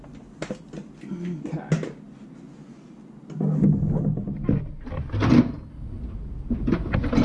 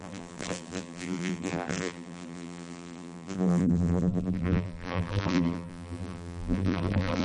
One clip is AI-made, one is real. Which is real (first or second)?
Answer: first